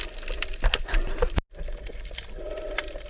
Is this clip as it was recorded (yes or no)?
yes